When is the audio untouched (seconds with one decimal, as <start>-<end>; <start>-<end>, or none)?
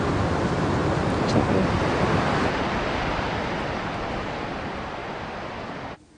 0.0-6.2